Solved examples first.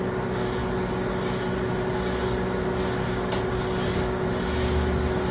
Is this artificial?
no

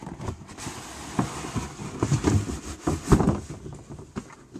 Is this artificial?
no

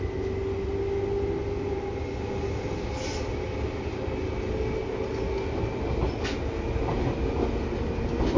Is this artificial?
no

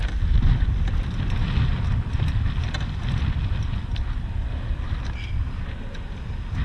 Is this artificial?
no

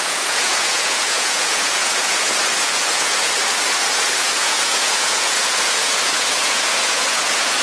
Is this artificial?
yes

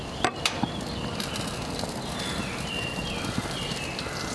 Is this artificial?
no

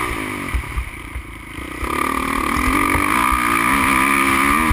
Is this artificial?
no